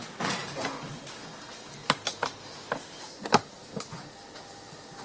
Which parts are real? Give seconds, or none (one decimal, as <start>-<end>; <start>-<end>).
0.0-0.4; 0.9-1.8; 3.0-5.0